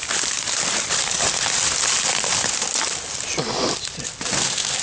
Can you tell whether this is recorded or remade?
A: recorded